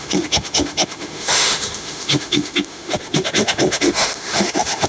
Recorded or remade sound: remade